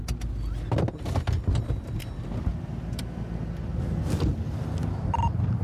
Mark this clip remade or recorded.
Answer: recorded